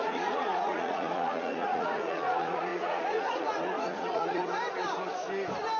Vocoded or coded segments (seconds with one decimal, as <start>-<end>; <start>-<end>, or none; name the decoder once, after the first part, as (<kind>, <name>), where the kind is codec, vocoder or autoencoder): 0.0-4.4 (vocoder, Vocos)